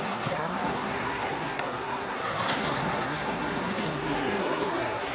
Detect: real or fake fake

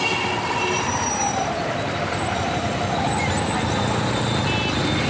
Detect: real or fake real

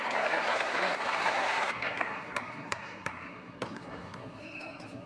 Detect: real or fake fake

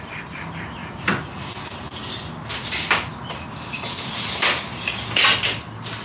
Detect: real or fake real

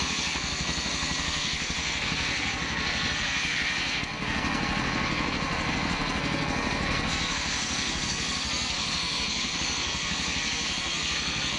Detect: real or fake fake